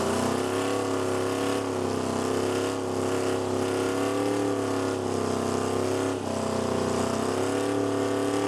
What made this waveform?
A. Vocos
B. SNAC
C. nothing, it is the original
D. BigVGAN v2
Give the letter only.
C